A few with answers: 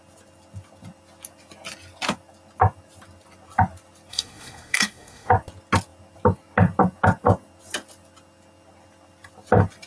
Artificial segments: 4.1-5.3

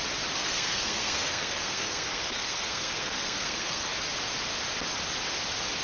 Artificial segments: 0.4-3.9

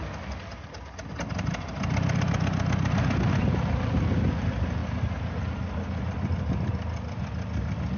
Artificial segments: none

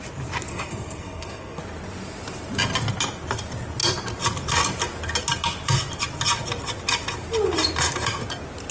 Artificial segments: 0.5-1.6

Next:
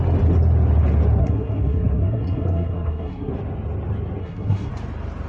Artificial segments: 1.2-3.3; 4.2-4.7

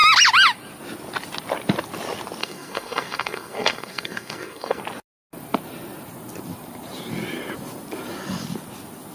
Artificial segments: 2.4-4.8

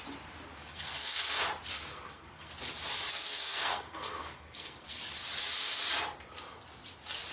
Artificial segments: 0.6-1.3; 1.9-2.5; 3.1-5.0

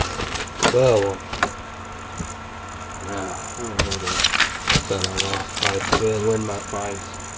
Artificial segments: none